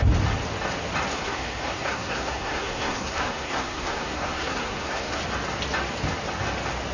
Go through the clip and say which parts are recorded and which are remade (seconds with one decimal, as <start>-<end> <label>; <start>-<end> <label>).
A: 0.0-1.1 recorded; 1.1-5.2 remade; 5.2-6.9 recorded